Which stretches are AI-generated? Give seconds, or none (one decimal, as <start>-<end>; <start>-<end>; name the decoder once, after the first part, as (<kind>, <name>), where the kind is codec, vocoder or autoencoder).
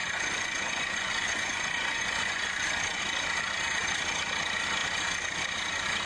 0.0-3.0 (vocoder, Vocos)